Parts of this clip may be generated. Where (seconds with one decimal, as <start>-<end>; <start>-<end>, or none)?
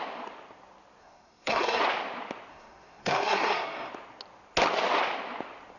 1.0-1.8; 2.5-3.9